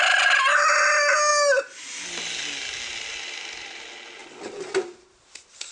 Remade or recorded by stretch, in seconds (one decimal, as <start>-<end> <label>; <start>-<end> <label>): 0.0-5.7 recorded